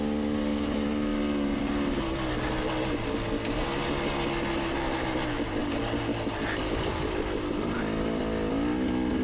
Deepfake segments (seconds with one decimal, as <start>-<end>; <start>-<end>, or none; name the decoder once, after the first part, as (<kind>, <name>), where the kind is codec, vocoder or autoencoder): none